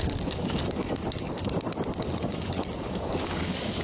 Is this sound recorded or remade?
remade